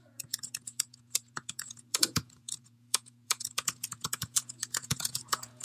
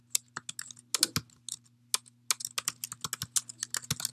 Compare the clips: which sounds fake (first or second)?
first